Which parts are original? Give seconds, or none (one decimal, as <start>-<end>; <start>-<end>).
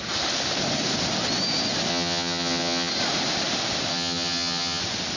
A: 0.0-1.9; 2.9-3.9; 4.8-5.2